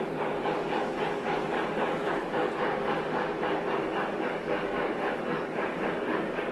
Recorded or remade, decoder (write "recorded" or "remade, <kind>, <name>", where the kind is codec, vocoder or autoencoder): remade, codec, DAC